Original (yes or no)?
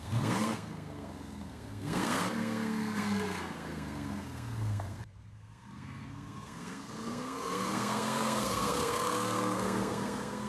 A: no